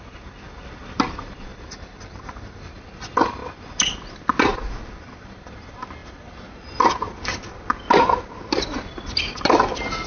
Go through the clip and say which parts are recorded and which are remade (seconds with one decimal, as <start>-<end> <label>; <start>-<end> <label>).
0.0-1.5 recorded; 1.5-2.7 remade; 2.7-10.1 recorded